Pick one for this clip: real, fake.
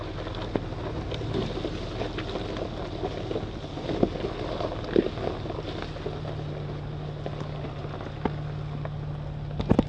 real